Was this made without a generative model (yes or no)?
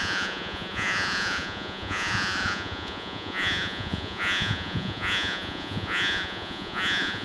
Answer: no